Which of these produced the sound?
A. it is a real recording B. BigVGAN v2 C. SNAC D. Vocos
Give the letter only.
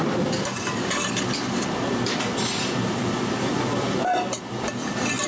B